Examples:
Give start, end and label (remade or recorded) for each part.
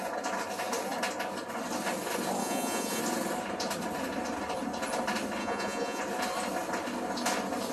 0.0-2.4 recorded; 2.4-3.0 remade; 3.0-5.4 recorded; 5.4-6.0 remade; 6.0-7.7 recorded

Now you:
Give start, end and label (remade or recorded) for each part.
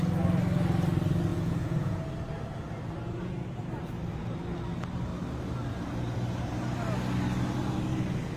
0.0-1.3 recorded; 1.3-2.0 remade; 2.0-8.4 recorded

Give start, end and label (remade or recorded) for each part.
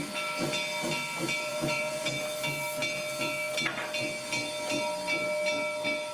0.0-1.5 recorded; 1.5-2.1 remade; 2.1-6.1 recorded